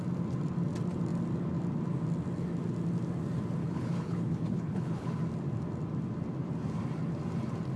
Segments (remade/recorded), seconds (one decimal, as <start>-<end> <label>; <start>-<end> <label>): 0.0-3.6 recorded; 3.6-5.2 remade; 5.2-7.8 recorded